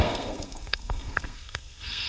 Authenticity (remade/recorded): remade